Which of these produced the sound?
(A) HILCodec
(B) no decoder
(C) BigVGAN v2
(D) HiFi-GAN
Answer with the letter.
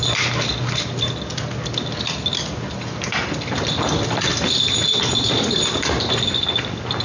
B